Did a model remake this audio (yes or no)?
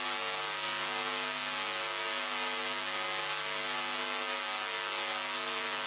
no